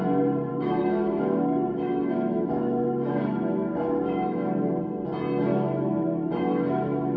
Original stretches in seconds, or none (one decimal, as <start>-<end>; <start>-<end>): 0.0-0.5; 4.8-5.5